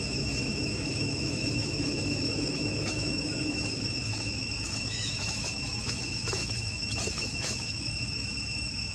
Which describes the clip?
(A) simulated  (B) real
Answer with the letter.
A